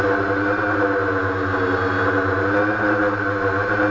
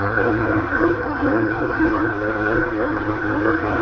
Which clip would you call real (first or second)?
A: first